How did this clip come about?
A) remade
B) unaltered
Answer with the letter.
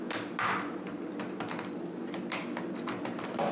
B